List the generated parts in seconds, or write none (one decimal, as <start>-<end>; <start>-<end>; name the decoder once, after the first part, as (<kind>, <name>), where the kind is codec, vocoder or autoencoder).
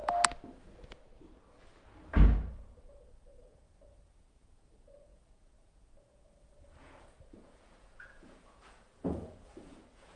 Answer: 2.5-10.2 (vocoder, Vocos)